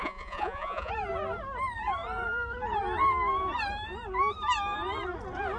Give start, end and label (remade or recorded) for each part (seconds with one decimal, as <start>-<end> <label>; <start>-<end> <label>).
0.0-0.9 remade; 0.9-5.6 recorded